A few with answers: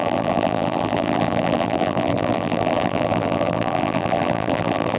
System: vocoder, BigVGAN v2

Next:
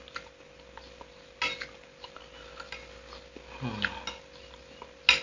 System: none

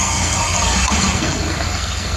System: codec, SNAC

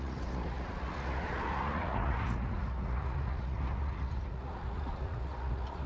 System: vocoder, Vocos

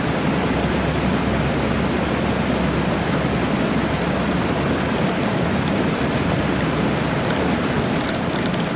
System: none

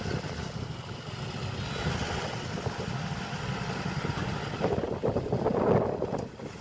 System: none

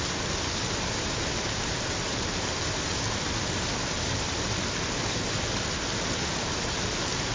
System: none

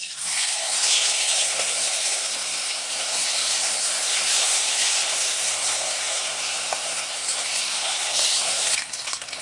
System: codec, SNAC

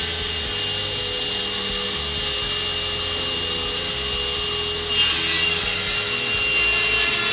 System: none